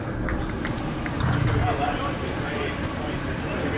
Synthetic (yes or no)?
no